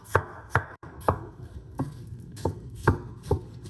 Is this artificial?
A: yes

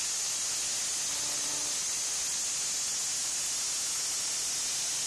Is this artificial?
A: no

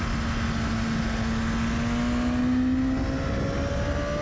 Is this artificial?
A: no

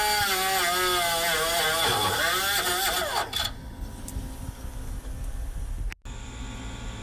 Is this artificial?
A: no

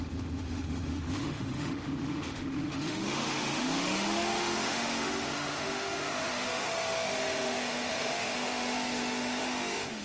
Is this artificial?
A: yes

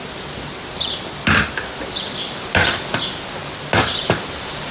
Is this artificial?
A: no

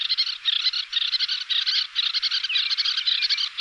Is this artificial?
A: no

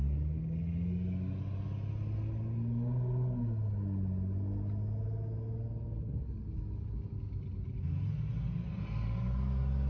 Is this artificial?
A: no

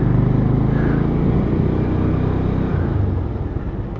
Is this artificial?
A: no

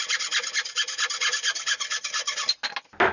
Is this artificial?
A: no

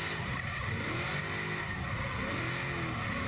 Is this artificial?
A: no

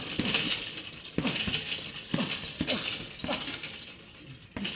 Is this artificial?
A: no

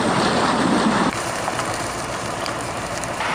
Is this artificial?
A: yes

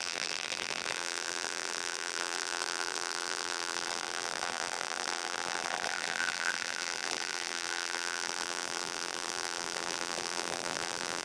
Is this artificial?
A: yes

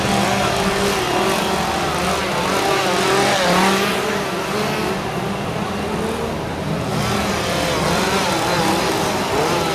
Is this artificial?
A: no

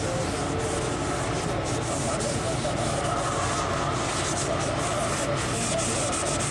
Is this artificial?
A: no